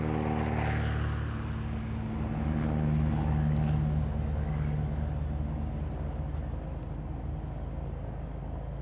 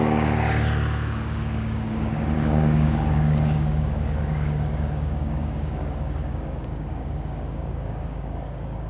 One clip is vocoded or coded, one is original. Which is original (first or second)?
first